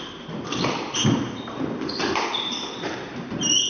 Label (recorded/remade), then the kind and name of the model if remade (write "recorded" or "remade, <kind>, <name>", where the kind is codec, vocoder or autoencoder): recorded